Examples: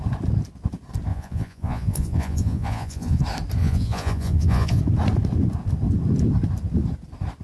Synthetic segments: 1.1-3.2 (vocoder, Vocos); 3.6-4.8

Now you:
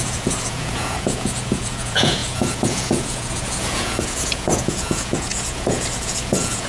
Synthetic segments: 0.0-6.7 (vocoder, Vocos)

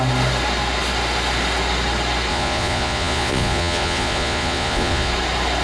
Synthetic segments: 2.3-5.1 (vocoder, Vocos)

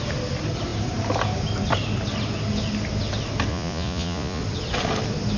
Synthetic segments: 3.5-4.4 (vocoder, Vocos)

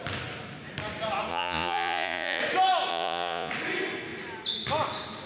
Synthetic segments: 1.3-2.4 (vocoder, Vocos); 2.9-3.5

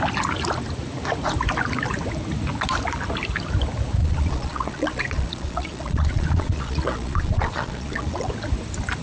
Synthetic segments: 4.0-8.3 (vocoder, Vocos)